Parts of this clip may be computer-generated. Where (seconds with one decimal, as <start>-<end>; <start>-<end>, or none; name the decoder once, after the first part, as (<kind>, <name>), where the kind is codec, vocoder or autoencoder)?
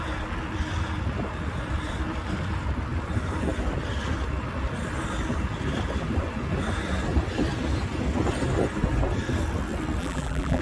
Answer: 10.0-10.6 (vocoder, BigVGAN v2)